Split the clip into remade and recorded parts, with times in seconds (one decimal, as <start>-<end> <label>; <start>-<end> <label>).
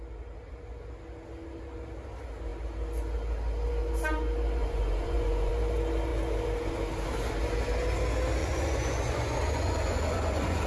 0.0-4.6 recorded; 4.6-5.5 remade; 5.5-8.4 recorded; 8.4-10.7 remade